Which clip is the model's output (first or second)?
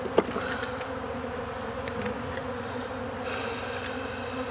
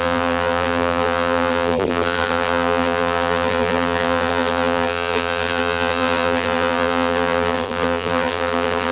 second